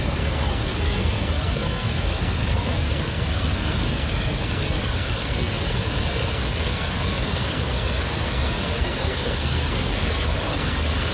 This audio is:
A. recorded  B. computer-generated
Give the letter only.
B